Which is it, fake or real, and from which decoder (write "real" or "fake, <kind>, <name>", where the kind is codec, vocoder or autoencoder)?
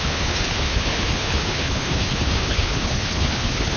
fake, codec, HILCodec